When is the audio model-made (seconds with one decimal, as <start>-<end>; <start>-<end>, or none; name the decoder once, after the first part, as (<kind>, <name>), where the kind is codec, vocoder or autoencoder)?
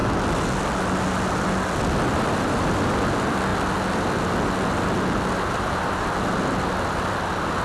none